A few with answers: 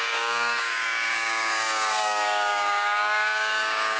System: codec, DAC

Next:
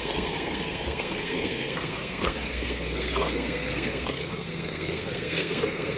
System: codec, SNAC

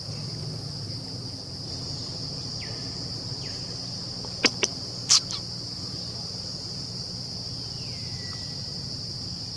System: none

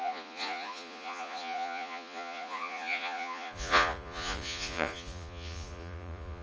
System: vocoder, Vocos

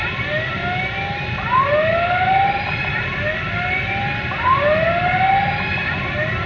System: none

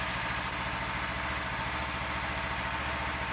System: none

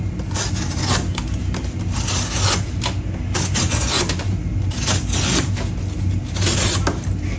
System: none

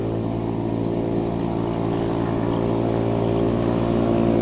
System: none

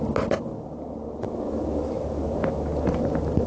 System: vocoder, BigVGAN v2